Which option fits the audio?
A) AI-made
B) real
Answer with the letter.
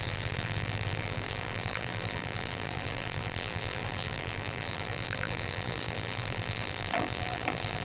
A